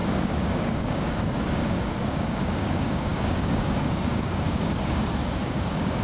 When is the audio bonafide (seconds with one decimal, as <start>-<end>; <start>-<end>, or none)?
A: none